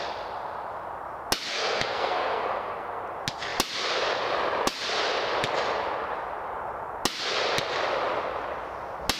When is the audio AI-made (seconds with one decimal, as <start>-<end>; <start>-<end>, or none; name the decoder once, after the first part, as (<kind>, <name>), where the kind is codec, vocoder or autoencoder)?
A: 1.5-3.0 (codec, SNAC)